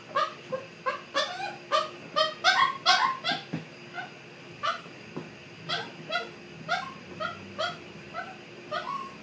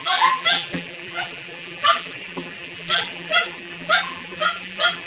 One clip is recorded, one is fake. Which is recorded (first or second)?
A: first